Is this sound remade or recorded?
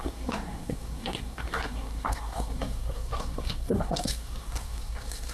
remade